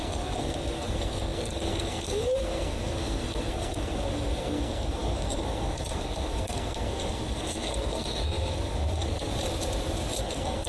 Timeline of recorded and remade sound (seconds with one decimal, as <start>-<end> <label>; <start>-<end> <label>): 0.0-9.3 remade; 9.3-10.2 recorded; 10.2-10.7 remade